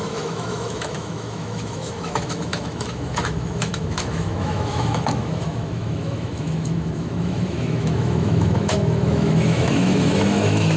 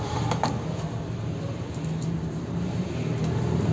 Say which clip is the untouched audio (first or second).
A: second